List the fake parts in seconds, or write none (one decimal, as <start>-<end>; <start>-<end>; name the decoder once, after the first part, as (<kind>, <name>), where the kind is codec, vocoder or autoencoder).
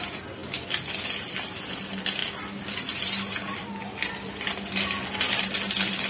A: none